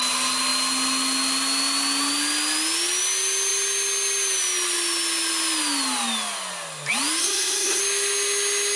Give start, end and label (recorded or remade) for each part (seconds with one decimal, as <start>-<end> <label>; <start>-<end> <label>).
0.0-7.2 recorded; 7.2-7.8 remade; 7.8-8.8 recorded